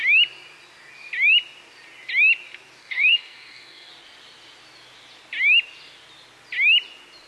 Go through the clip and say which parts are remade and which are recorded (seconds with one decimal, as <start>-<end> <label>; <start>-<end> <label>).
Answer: 0.0-2.8 recorded; 2.8-3.9 remade; 3.9-7.3 recorded